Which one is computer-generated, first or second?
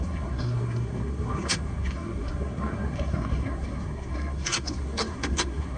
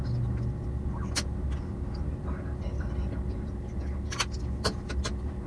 first